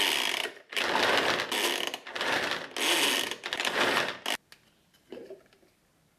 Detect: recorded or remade recorded